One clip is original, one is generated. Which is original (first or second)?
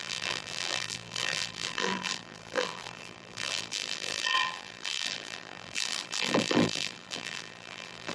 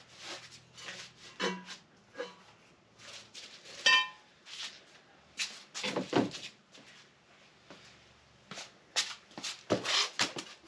second